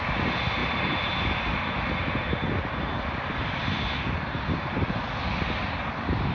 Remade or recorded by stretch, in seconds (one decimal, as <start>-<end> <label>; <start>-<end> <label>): 0.0-6.3 recorded